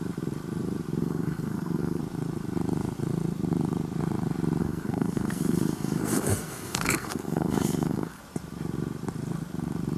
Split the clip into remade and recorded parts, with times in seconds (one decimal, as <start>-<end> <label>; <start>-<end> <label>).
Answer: 0.0-1.0 recorded; 1.0-2.0 remade; 2.0-4.6 recorded; 4.6-8.2 remade; 8.2-10.0 recorded